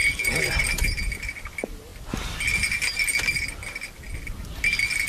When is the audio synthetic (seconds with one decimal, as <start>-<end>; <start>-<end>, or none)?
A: none